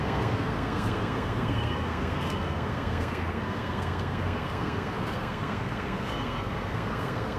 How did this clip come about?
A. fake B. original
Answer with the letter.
A